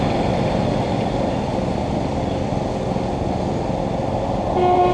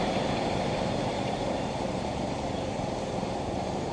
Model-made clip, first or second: second